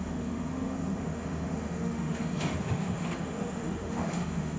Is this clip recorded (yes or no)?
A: no